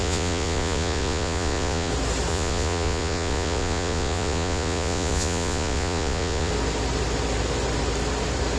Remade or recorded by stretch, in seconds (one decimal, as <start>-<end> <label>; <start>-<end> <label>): 0.0-1.9 remade; 1.9-2.3 recorded; 2.3-6.5 remade; 6.5-8.6 recorded